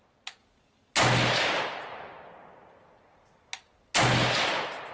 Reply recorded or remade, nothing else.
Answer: recorded